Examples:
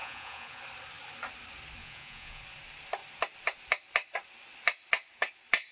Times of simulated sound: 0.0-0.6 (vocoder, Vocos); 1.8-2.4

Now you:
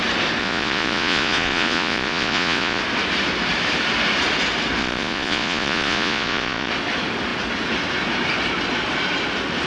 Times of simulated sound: 0.4-2.8 (vocoder, Vocos); 4.8-6.7

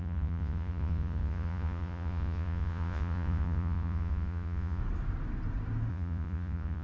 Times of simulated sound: 0.0-4.8 (vocoder, Vocos); 5.9-6.8

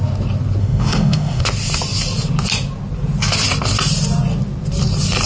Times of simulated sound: 0.6-1.4 (autoencoder, DAC-VAE)

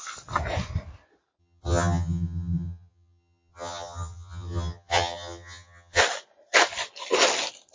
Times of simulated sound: 1.4-6.0 (vocoder, HiFi-GAN)

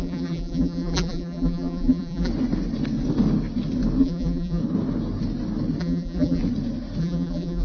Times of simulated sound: 0.0-2.3 (vocoder, BigVGAN v2); 4.0-4.6; 5.8-6.4; 7.0-7.6